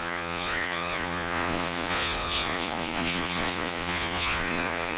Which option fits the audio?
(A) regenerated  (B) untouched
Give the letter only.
A